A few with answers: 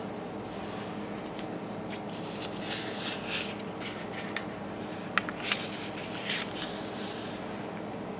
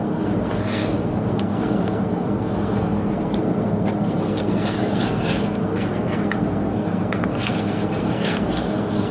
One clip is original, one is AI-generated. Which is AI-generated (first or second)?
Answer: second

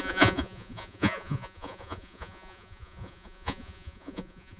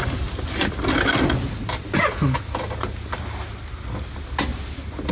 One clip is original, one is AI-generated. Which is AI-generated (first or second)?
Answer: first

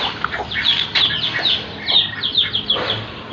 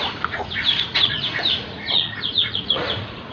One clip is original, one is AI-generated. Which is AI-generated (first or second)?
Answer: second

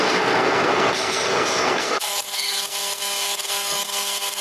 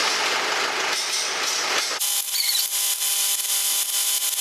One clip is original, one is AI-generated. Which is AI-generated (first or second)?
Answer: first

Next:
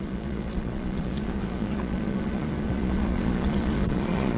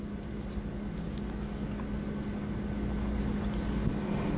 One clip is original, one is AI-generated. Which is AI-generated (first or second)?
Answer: first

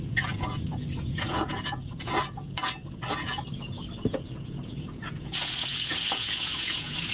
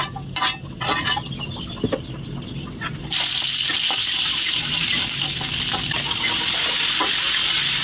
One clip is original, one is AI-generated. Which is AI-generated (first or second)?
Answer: first